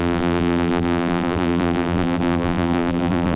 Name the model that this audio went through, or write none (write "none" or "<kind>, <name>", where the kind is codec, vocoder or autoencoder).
vocoder, BigVGAN v2